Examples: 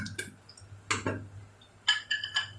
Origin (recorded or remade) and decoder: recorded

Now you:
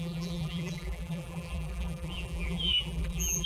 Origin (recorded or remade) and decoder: remade, vocoder, BigVGAN v2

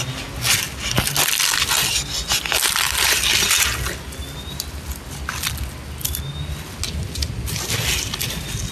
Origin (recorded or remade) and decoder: recorded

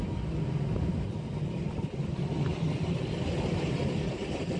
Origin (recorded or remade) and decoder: recorded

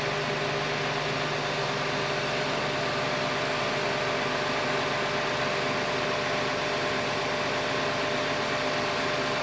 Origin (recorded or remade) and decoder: recorded